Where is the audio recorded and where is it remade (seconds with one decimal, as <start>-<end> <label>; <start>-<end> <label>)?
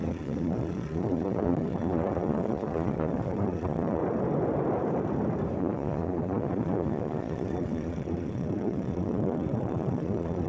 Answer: 0.0-4.0 remade; 4.0-5.6 recorded; 5.6-10.5 remade